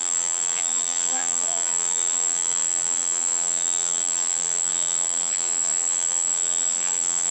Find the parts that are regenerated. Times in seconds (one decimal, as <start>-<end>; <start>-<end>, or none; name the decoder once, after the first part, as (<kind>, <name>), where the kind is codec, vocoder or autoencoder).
0.0-7.3 (vocoder, BigVGAN v2)